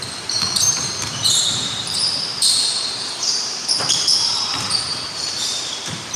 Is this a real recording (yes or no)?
no